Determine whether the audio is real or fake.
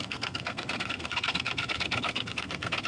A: fake